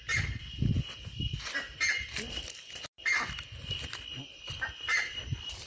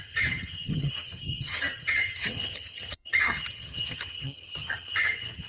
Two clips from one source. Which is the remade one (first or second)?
second